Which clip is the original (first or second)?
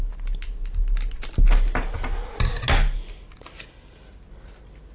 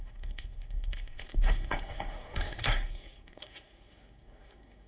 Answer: first